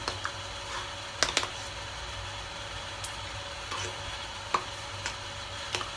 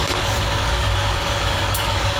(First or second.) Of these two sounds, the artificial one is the second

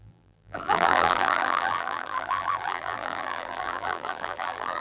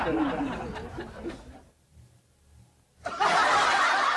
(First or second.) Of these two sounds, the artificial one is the first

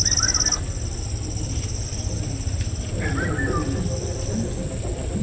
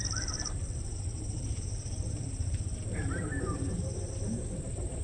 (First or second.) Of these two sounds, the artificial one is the second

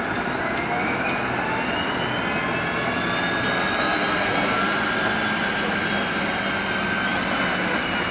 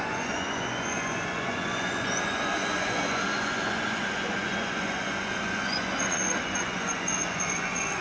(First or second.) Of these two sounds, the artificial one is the second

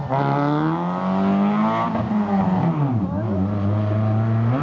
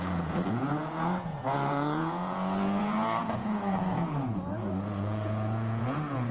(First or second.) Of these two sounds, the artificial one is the second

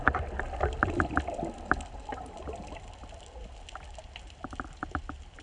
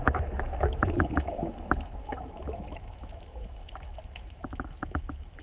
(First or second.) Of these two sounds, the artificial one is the second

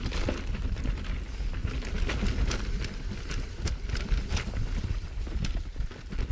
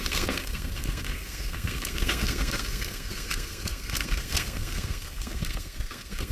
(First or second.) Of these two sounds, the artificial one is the second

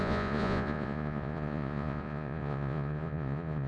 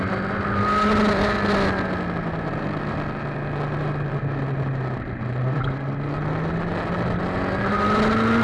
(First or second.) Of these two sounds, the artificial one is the first